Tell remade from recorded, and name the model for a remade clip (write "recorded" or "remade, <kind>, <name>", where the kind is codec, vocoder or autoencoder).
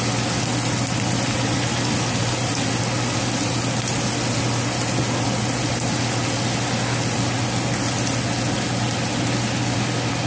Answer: recorded